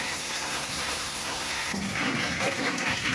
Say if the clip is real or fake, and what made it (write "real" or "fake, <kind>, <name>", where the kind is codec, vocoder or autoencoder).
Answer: fake, codec, SNAC